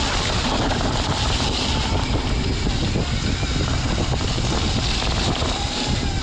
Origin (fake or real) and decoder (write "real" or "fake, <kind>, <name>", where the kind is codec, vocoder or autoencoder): real